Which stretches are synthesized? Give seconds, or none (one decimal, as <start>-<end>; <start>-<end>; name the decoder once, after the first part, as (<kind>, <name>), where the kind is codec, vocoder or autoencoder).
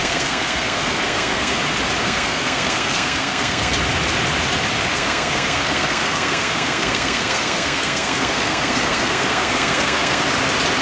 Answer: 0.0-1.6 (codec, SNAC); 2.0-3.7; 4.9-10.2